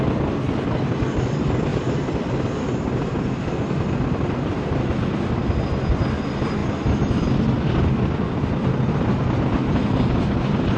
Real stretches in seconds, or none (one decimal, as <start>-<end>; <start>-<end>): 0.0-10.8